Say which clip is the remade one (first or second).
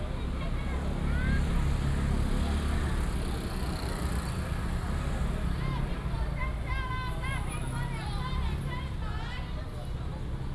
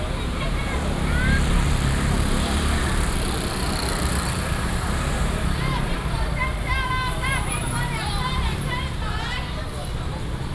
second